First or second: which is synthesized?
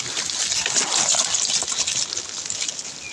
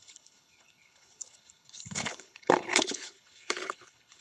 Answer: second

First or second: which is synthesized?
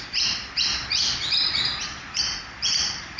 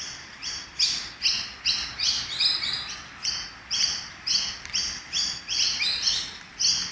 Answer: first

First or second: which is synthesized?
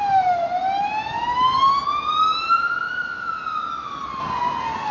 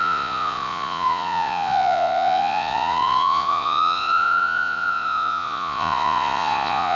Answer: second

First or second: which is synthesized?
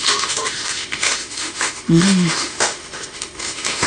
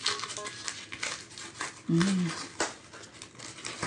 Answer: first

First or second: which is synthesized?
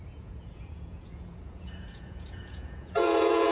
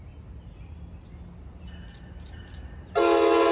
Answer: first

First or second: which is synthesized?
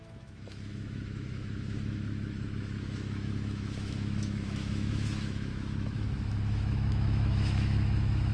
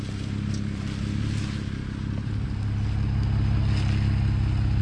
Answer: first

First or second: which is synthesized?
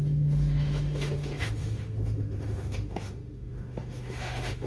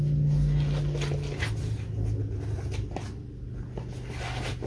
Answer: first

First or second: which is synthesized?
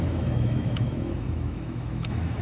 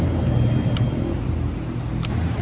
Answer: first